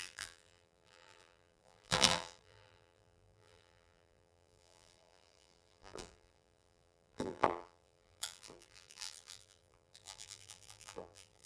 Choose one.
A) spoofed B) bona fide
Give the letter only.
A